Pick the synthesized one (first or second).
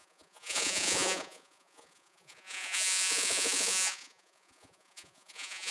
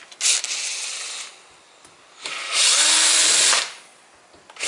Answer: first